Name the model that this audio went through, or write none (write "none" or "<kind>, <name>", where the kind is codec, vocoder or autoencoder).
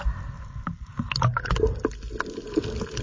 none